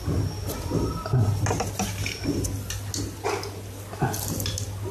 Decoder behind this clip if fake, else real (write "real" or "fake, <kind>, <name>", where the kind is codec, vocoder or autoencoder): real